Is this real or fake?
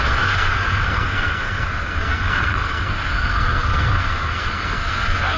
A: fake